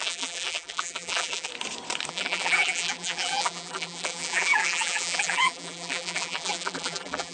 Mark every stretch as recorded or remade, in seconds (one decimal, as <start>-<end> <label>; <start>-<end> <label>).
0.0-1.5 remade; 1.5-2.1 recorded; 2.1-7.3 remade

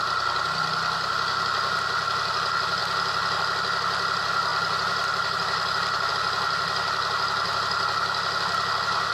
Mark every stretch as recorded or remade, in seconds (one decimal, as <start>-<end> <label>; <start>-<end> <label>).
0.0-4.5 recorded; 4.5-6.1 remade; 6.1-9.1 recorded

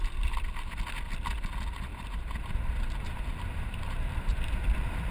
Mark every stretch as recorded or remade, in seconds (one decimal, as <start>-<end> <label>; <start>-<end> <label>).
0.0-1.9 recorded; 1.9-5.1 remade

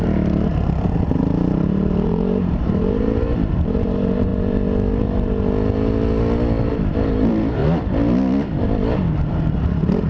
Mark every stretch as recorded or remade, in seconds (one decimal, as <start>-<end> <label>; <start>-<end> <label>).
0.0-4.3 remade; 4.3-6.7 recorded; 6.7-7.6 remade; 7.6-9.3 recorded; 9.3-10.1 remade

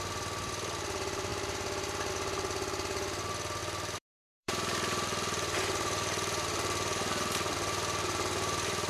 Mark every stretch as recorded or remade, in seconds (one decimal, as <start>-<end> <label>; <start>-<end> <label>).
0.0-3.6 recorded; 3.6-8.9 remade